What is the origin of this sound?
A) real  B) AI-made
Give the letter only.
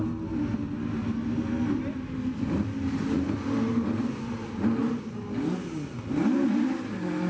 A